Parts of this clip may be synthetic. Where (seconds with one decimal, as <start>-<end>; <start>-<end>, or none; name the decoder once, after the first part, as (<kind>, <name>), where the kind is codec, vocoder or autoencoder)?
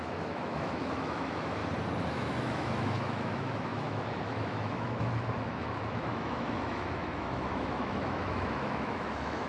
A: 0.0-1.6 (autoencoder, DAC-VAE); 2.1-9.5